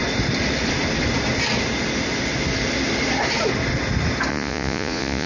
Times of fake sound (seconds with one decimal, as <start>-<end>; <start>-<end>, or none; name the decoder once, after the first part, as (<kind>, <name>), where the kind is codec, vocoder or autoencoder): 4.3-5.3 (vocoder, Vocos)

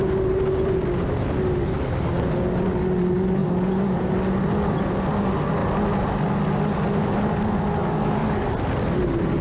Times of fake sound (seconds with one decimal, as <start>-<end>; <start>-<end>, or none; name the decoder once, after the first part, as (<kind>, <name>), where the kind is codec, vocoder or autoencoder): 7.8-8.5 (codec, DAC)

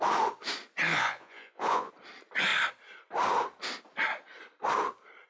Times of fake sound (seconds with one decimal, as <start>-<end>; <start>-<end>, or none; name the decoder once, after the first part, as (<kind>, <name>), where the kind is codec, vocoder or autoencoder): 0.9-1.9 (vocoder, Vocos)

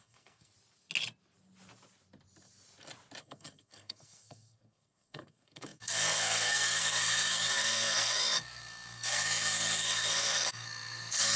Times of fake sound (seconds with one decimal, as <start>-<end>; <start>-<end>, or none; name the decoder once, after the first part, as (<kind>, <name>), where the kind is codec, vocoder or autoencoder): 0.0-0.5 (codec, SNAC); 3.2-11.4

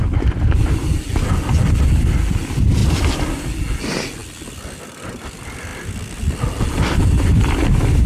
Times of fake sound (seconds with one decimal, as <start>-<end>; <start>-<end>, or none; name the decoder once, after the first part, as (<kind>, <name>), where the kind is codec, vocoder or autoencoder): none

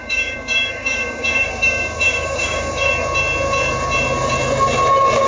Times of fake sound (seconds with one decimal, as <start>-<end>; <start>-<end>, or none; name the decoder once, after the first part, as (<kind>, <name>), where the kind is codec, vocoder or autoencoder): 0.0-2.9 (codec, DAC)

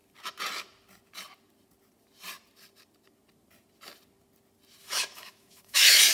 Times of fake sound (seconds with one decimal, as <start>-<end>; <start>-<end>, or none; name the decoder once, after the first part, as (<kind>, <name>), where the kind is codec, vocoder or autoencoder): 4.8-6.1 (autoencoder, DAC-VAE)

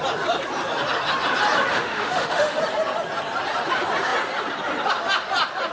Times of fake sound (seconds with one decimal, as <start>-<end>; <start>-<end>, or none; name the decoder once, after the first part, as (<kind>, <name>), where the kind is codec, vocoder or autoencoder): 1.7-2.6 (autoencoder, DAC-VAE)